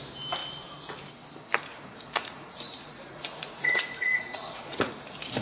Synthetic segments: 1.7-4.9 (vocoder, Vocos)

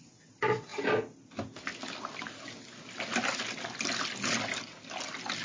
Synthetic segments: none

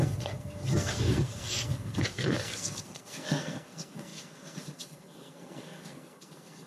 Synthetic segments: 0.0-6.7 (codec, SNAC)

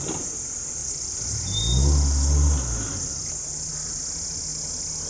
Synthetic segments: none

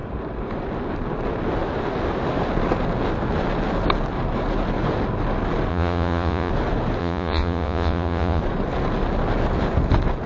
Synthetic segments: 5.7-6.5 (vocoder, Vocos); 7.0-8.4

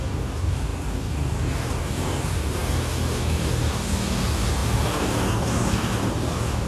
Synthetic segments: 0.0-6.7 (codec, DAC)

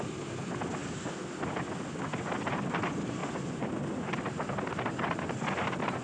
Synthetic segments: none

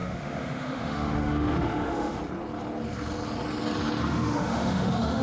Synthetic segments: 0.0-2.2 (autoencoder, DAC-VAE); 4.0-5.2